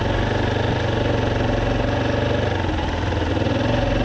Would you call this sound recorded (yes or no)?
yes